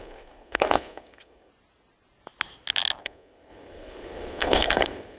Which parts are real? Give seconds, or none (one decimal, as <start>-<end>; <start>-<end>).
1.5-3.0